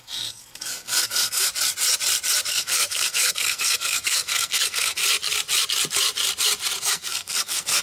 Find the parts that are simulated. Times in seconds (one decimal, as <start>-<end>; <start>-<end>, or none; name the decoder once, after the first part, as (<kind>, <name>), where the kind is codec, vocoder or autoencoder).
0.0-1.5 (codec, SNAC); 2.5-5.0; 6.8-7.8